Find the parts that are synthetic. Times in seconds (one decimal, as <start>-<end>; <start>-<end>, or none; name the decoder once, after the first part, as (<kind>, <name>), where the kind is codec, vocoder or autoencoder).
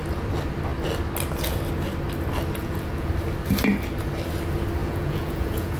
2.6-3.1 (vocoder, Vocos); 4.8-5.8